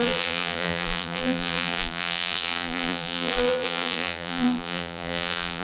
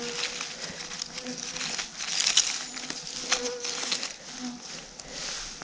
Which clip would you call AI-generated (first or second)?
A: first